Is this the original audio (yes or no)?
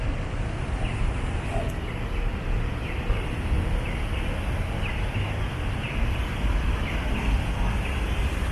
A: yes